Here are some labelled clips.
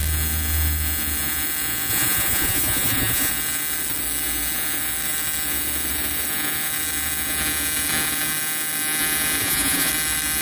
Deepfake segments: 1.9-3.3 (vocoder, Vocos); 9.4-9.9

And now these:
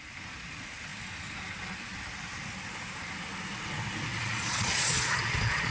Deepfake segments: 4.1-5.7 (vocoder, Vocos)

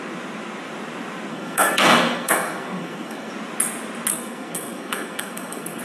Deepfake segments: 1.3-3.3 (codec, SNAC); 4.1-5.8

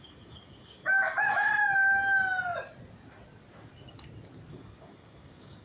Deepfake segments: 0.0-1.5 (codec, DAC); 4.5-5.6

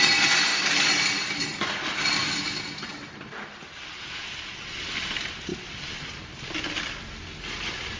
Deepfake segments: none